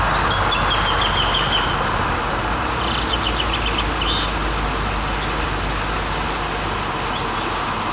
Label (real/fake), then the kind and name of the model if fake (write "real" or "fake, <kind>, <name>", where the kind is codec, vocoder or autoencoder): real